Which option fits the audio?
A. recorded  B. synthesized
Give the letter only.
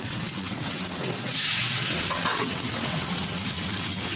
B